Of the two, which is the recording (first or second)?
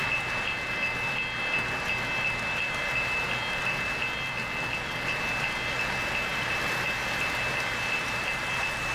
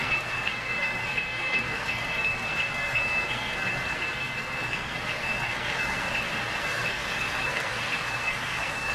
first